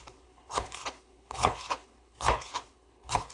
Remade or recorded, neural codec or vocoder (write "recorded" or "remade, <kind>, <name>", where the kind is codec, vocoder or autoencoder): remade, codec, HILCodec